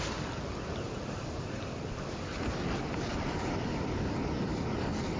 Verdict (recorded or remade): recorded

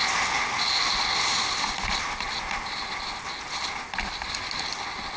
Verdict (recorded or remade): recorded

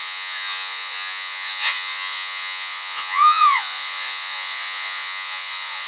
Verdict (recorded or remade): remade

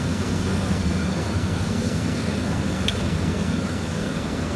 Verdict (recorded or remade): remade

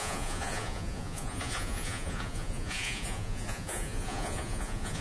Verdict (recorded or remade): remade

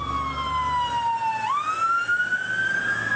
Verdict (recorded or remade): recorded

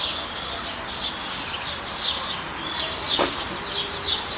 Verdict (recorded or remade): recorded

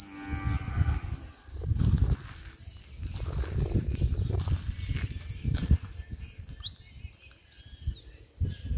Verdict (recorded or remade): recorded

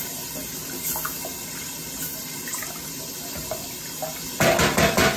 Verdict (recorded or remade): recorded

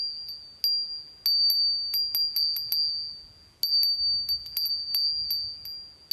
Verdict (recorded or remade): recorded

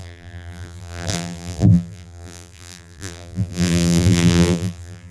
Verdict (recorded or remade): remade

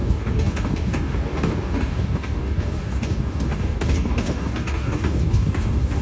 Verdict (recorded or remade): remade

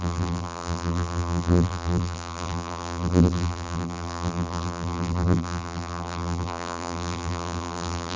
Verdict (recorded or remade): remade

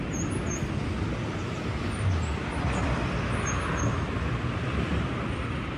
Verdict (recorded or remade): recorded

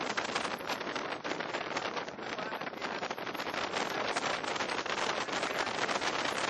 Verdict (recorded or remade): recorded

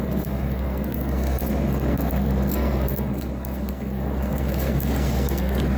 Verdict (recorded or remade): remade